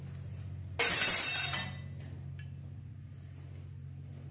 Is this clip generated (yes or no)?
no